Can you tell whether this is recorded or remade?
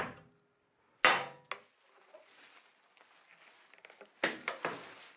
recorded